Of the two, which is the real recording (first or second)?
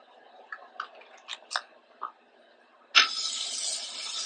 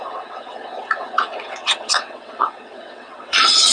first